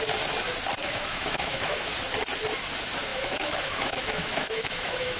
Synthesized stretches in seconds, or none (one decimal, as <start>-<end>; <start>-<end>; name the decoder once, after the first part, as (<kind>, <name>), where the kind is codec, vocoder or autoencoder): 0.8-1.9 (autoencoder, DAC-VAE); 3.1-5.2